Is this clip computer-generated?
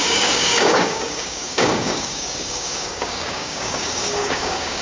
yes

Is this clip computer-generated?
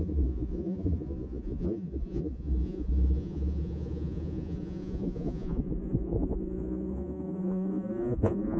yes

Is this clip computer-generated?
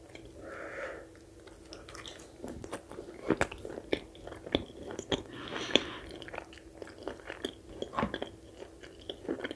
no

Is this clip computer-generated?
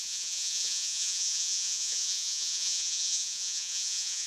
yes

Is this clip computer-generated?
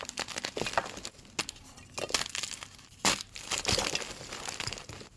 no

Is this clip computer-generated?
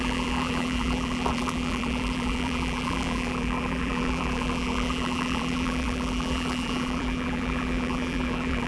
yes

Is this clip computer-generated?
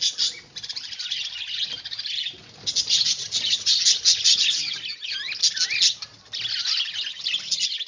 no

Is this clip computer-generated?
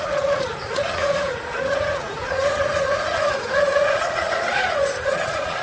yes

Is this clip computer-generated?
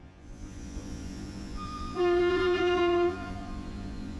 yes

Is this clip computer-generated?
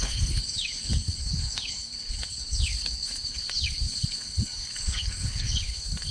yes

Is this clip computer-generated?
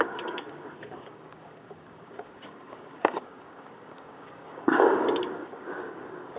yes